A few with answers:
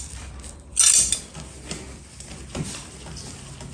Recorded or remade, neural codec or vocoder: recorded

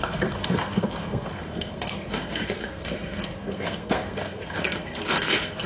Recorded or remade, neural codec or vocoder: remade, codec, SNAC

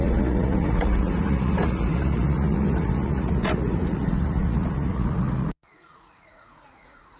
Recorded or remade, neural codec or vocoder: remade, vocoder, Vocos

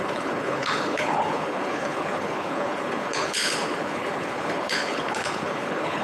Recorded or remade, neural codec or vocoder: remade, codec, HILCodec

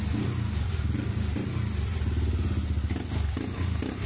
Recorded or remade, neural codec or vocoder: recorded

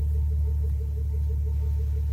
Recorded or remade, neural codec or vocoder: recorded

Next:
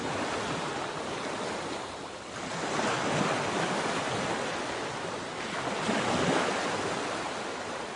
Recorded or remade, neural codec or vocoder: recorded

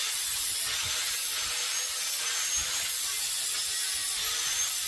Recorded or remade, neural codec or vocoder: recorded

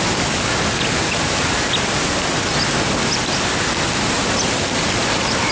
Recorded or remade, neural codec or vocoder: recorded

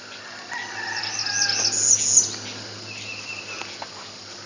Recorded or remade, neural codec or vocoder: recorded